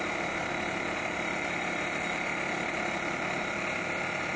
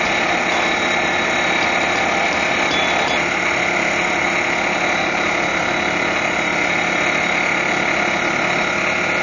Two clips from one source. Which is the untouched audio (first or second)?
second